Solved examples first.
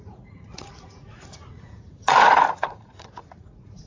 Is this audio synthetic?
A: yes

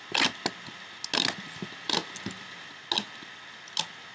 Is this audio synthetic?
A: no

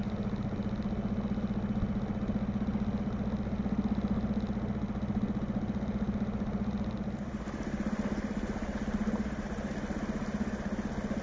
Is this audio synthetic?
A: no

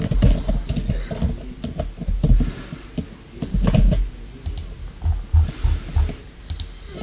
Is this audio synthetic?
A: no